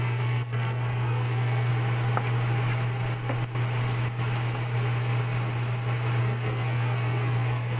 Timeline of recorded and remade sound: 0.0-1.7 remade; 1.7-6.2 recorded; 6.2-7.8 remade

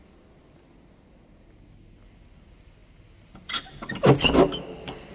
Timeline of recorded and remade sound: 0.0-5.1 recorded

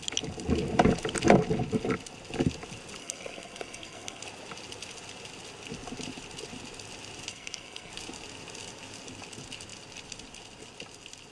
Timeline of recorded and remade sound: 0.0-3.0 recorded; 3.0-4.2 remade; 4.2-7.3 recorded; 7.3-7.9 remade; 7.9-11.3 recorded